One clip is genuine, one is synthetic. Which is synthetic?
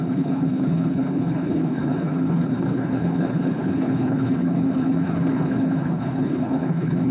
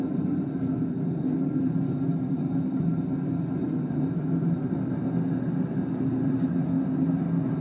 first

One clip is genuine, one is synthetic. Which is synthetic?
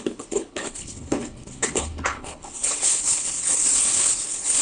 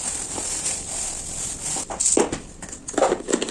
first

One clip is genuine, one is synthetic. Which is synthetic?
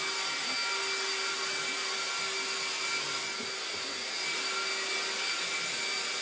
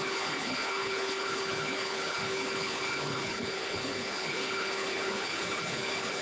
second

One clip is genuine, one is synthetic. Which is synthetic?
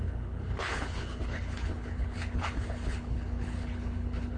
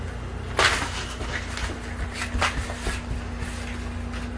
first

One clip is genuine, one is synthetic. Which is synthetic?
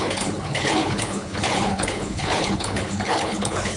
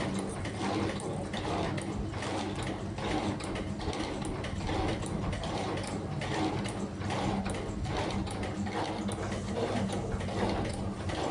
first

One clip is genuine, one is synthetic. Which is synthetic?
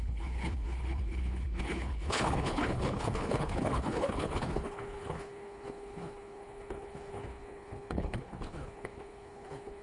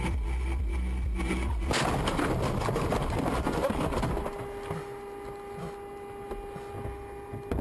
first